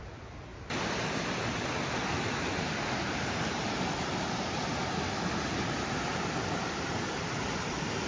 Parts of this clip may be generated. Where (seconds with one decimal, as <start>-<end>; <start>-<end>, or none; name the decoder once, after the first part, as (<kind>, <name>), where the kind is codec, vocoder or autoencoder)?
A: none